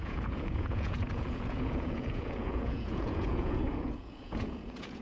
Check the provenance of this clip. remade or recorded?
remade